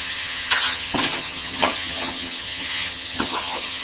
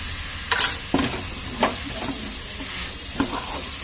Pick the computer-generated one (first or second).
first